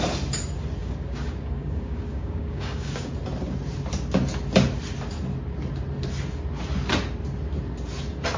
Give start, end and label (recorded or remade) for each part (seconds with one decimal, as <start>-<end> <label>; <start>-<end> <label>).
0.0-0.8 recorded; 0.8-3.1 remade; 3.1-8.4 recorded